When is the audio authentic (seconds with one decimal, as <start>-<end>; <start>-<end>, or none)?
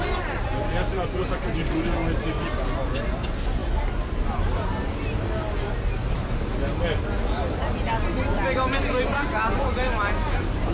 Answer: 0.0-10.7